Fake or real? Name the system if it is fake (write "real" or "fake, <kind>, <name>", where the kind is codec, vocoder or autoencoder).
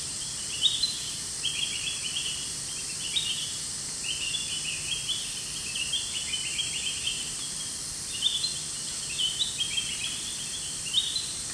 fake, vocoder, BigVGAN v2